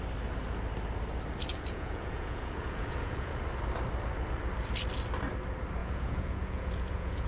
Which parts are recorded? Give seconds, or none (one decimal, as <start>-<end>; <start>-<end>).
0.0-1.5; 3.4-5.8